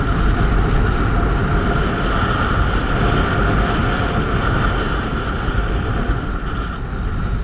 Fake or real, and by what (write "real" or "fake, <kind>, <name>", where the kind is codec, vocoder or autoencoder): real